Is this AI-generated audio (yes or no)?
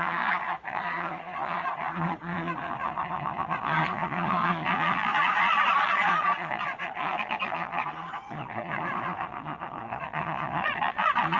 yes